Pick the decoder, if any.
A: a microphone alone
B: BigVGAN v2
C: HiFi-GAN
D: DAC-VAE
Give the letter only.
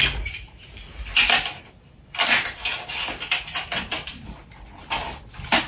A